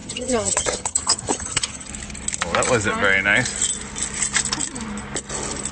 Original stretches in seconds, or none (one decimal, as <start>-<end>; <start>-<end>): 1.9-5.7